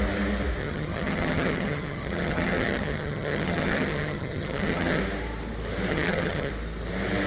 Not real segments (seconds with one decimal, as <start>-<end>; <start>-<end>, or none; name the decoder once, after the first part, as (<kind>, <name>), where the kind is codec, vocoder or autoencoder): 0.6-5.0 (vocoder, HiFi-GAN); 5.9-6.5